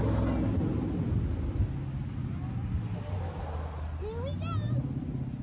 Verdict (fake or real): real